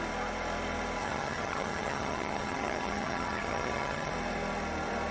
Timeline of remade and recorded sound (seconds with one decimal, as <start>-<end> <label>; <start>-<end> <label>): 0.0-1.0 recorded; 1.0-4.1 remade; 4.1-5.1 recorded